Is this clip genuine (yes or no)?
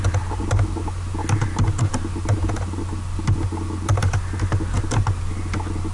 yes